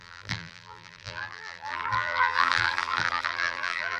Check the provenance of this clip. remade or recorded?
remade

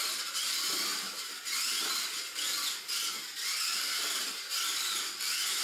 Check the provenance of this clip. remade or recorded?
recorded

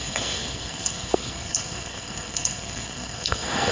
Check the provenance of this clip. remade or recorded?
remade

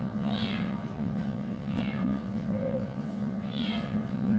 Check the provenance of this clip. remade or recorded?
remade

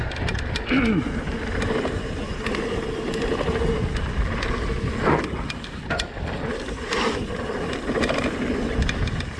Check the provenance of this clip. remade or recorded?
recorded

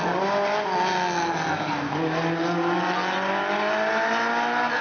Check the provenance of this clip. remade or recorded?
recorded